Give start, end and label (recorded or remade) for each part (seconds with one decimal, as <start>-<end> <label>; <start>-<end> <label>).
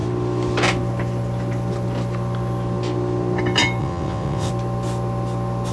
0.0-3.8 recorded; 3.8-4.5 remade; 4.5-5.7 recorded